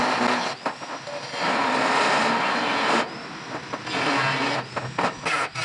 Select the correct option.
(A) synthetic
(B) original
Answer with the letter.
B